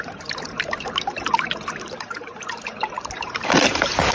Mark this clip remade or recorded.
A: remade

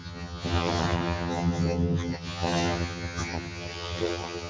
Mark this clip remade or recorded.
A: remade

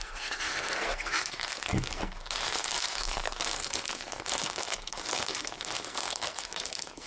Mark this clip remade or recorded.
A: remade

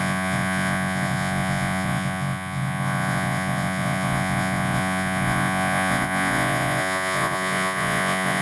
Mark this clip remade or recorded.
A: remade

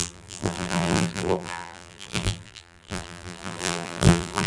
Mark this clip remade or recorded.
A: remade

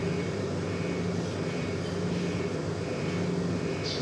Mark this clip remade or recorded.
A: recorded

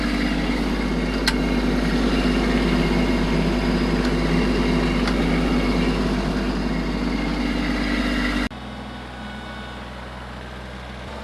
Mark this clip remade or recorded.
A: recorded